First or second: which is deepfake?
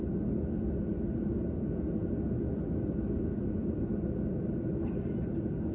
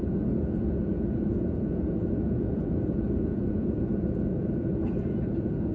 second